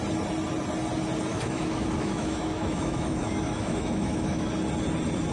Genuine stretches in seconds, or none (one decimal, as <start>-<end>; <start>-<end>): 0.0-1.3; 4.5-5.3